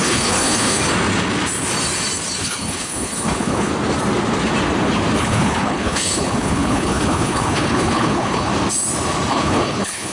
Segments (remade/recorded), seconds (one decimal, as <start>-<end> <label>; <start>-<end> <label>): 0.0-0.8 remade; 0.8-2.4 recorded; 2.4-3.7 remade; 3.7-5.2 recorded; 5.2-8.5 remade; 8.5-9.3 recorded; 9.3-10.1 remade

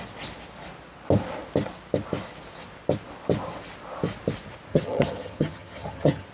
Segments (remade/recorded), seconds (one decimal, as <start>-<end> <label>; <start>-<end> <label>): 0.0-4.7 recorded; 4.7-6.3 remade